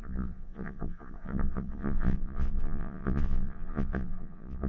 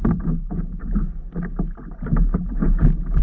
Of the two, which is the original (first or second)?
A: second